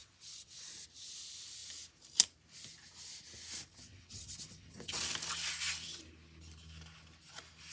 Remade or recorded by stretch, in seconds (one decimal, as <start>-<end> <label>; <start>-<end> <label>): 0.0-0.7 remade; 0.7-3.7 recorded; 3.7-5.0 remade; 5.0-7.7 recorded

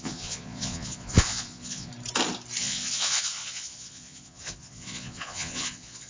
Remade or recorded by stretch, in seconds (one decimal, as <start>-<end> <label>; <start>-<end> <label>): 0.0-1.9 remade; 1.9-2.6 recorded; 2.6-6.1 remade

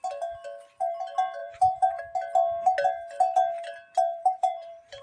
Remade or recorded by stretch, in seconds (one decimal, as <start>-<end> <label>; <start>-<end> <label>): 0.0-1.4 recorded; 1.4-2.0 remade; 2.0-4.2 recorded; 4.2-5.0 remade

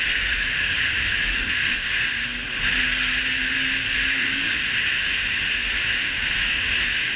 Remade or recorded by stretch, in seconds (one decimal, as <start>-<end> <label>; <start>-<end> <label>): 0.0-2.0 remade; 2.0-4.2 recorded; 4.2-7.2 remade

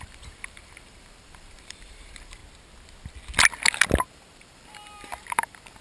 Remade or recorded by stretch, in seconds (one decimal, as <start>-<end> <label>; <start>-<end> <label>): 0.0-2.4 remade; 2.4-4.1 recorded; 4.1-5.8 remade

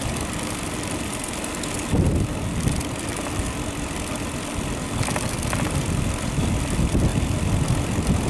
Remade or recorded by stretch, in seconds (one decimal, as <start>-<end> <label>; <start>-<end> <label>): 0.0-8.3 recorded

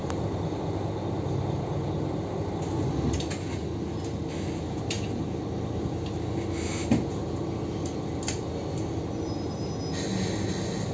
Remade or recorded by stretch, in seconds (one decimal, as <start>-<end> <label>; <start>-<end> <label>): 0.0-10.9 recorded